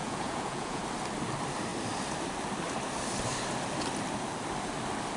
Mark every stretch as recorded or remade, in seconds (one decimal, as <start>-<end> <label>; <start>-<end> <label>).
0.0-0.8 remade; 0.8-5.2 recorded